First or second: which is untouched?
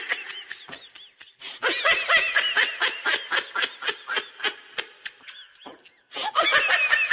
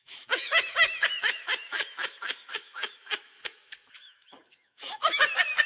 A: first